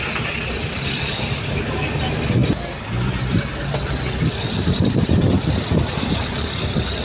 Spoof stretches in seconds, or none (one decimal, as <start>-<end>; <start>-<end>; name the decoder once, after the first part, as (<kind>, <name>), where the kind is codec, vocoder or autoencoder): none